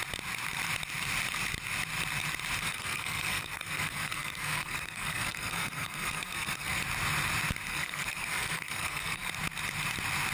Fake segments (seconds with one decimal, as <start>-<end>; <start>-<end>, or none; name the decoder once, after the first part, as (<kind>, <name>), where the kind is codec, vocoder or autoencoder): 2.6-6.8 (codec, SNAC); 7.7-9.3